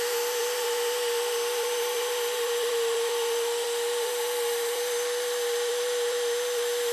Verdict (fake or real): fake